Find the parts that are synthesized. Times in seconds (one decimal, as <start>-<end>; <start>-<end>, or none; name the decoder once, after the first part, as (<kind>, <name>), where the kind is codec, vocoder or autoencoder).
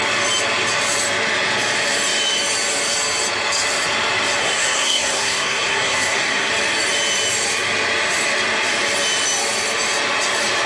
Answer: 4.4-6.5 (codec, SNAC)